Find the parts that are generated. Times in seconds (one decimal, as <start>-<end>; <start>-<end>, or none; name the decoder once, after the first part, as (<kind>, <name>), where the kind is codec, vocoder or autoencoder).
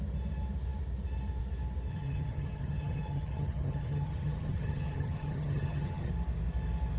1.9-6.1 (vocoder, HiFi-GAN)